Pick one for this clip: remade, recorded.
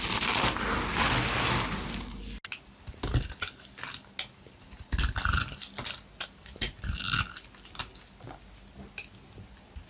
recorded